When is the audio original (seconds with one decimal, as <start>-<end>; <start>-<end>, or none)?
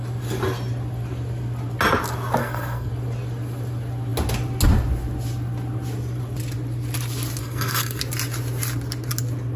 0.0-2.4; 2.9-7.4; 8.0-9.6